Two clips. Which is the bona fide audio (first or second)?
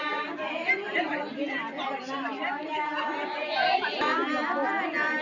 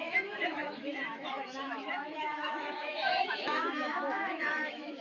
first